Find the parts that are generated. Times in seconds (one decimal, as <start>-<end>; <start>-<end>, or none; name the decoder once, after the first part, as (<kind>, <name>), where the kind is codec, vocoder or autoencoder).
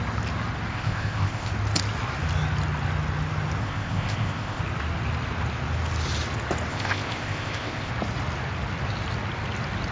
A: 0.7-1.5 (codec, ZipCodec); 3.6-4.6; 6.7-7.9